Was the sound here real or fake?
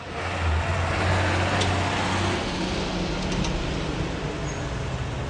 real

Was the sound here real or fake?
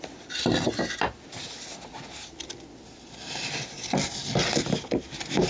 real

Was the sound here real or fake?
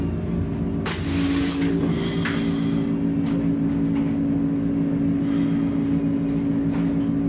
real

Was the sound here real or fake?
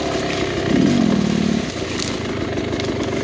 real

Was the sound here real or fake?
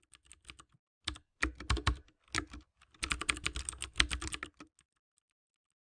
real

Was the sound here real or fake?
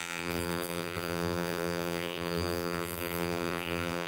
fake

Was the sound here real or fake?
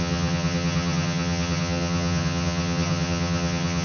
fake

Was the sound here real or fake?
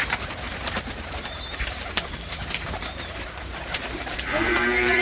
fake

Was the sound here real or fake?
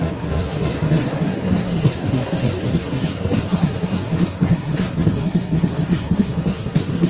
fake